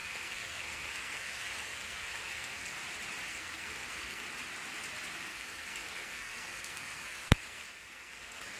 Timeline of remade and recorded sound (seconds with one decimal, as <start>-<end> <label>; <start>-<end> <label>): 0.0-2.7 remade; 2.7-3.3 recorded; 3.3-4.2 remade; 4.2-5.3 recorded; 5.3-8.6 remade